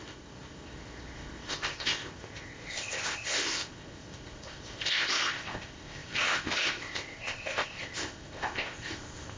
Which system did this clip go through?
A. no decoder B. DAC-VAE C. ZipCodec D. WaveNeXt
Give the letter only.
C